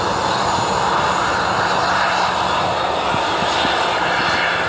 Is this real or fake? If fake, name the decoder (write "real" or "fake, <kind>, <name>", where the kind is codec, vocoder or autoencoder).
real